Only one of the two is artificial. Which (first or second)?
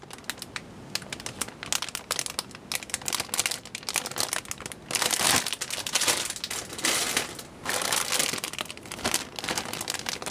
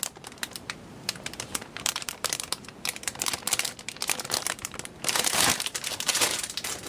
second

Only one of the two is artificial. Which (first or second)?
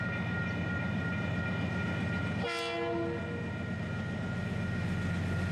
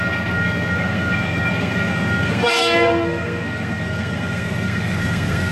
second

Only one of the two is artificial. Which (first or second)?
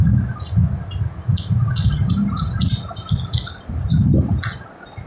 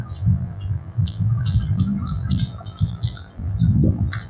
second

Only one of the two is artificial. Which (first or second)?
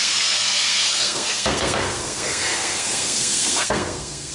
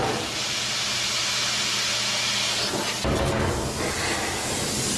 first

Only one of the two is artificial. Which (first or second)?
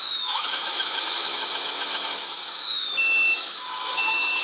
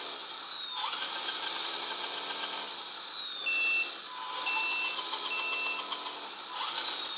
first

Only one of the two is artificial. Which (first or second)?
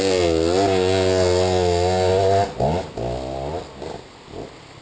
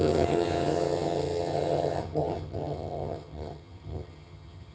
second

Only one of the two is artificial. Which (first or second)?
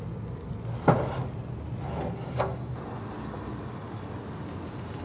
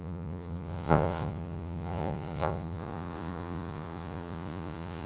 second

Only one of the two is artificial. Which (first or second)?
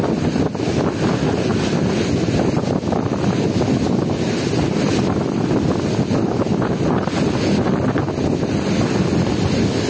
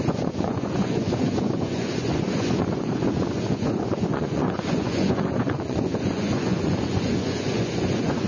second